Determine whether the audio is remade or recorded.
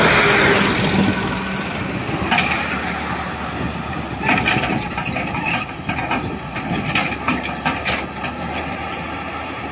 recorded